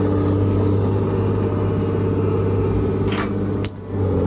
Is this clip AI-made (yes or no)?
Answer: no